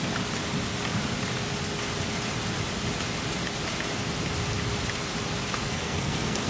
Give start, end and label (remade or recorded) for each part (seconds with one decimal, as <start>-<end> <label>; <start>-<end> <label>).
0.0-5.6 recorded; 5.6-6.5 remade